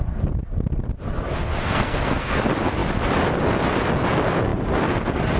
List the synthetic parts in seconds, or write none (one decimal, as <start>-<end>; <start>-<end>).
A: 1.6-2.4